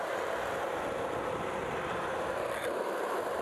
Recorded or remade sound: recorded